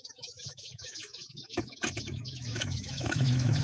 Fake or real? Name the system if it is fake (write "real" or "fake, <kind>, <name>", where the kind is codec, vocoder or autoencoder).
fake, autoencoder, DAC-VAE